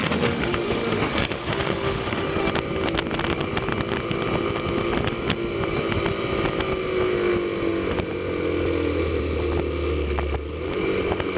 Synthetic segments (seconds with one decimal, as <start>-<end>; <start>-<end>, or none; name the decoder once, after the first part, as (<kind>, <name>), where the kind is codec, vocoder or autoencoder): 0.0-2.5 (autoencoder, DAC-VAE)